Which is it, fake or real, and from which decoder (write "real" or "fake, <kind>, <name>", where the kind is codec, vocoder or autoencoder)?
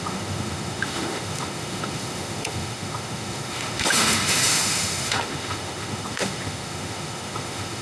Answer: fake, autoencoder, DAC-VAE